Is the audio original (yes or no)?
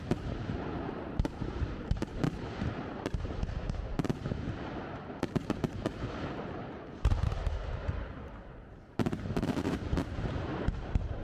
no